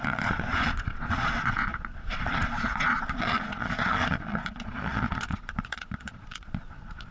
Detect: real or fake fake